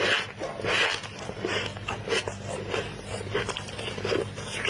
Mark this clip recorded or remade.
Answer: recorded